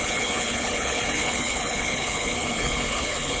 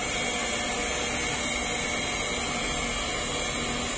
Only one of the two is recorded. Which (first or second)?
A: second